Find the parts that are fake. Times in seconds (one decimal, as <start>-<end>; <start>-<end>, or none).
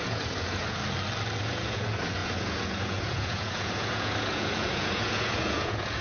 0.0-0.8; 1.4-6.0